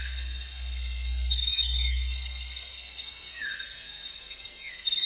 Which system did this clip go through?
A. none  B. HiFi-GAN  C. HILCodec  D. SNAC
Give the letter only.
D